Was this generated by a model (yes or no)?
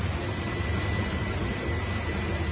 no